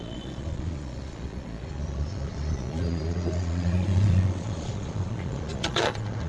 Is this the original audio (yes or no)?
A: no